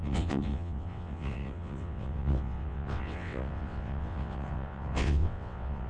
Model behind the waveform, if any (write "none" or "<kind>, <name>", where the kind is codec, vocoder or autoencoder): vocoder, WaveNeXt